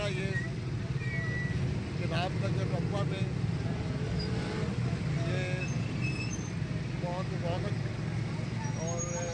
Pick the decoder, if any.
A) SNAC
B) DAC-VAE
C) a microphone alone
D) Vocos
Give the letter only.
C